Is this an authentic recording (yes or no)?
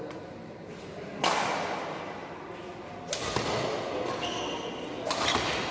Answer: yes